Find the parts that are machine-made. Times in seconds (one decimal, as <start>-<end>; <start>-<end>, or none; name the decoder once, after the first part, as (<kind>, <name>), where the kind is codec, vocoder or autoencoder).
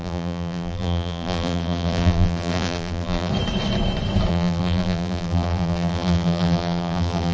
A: 0.0-3.3 (vocoder, BigVGAN v2); 4.3-7.3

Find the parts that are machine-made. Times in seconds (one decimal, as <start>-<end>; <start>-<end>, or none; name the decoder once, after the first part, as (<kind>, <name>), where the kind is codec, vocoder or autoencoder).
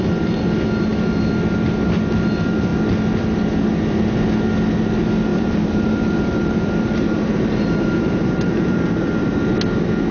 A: 5.3-9.4 (vocoder, BigVGAN v2)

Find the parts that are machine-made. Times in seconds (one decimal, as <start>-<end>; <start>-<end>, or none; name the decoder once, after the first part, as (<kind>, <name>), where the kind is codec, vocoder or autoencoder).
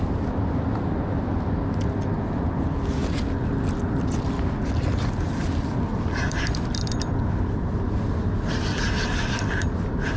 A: none